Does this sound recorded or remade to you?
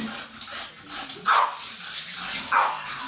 recorded